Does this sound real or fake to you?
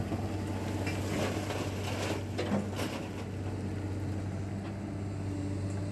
real